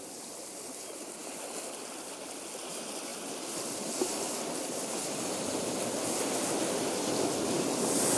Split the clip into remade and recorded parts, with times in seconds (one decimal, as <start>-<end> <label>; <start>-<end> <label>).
0.0-8.2 recorded